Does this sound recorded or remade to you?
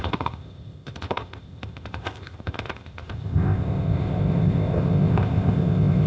remade